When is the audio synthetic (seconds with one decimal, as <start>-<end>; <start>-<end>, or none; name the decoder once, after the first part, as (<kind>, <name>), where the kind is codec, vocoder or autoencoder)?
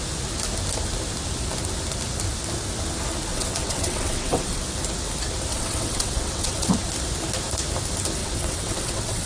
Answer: 3.3-4.6 (vocoder, WaveNeXt); 5.5-6.7; 8.2-9.3